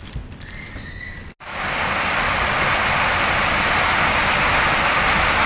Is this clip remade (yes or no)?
no